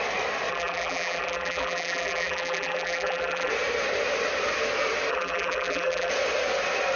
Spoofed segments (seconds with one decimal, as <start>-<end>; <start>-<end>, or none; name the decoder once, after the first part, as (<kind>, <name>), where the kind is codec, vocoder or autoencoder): 0.5-3.5 (vocoder, BigVGAN v2); 5.1-6.1